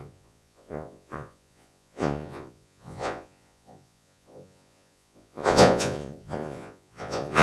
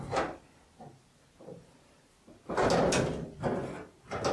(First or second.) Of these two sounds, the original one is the second